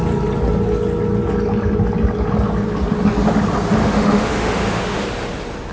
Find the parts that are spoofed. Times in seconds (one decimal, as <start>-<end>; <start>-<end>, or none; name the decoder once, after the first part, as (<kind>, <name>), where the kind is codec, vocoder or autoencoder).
3.8-5.0 (autoencoder, DAC-VAE)